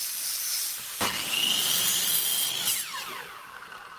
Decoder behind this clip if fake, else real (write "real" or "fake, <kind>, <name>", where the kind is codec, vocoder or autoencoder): real